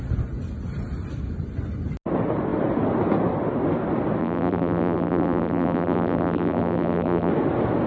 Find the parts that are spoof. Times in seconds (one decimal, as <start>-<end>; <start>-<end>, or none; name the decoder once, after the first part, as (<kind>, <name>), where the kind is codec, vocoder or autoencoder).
4.2-7.3 (vocoder, BigVGAN v2)